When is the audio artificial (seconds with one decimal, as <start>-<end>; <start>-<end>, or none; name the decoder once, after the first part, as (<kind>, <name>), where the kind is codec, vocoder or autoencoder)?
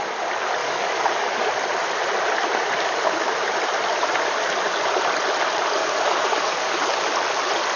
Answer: 0.6-1.5 (codec, DAC); 5.8-7.1